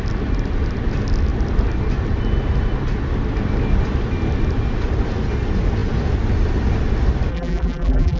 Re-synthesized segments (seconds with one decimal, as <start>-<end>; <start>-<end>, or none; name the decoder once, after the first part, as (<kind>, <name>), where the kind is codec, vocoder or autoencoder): 7.3-8.2 (vocoder, BigVGAN v2)